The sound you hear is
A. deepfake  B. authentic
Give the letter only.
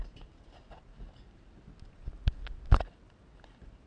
B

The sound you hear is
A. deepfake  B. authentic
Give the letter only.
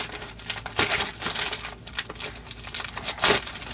B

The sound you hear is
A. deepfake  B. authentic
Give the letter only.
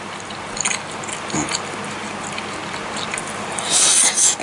B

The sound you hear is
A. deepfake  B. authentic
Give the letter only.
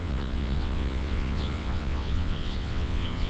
A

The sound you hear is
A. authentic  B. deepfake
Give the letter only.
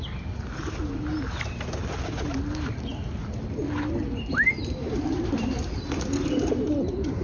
A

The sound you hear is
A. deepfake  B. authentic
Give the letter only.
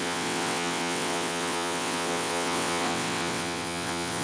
A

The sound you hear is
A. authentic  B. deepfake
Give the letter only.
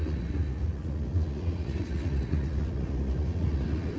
B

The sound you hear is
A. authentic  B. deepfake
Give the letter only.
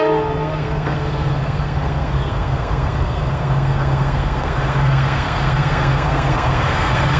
B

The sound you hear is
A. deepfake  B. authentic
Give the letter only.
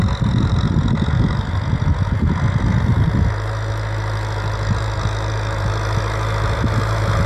B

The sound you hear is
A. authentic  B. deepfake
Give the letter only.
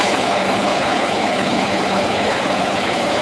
B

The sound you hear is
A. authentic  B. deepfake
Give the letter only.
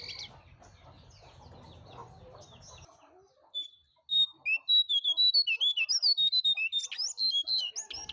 A